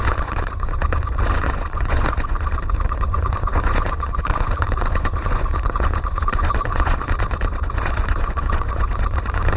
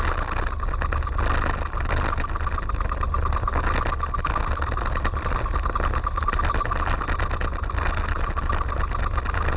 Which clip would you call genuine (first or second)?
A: second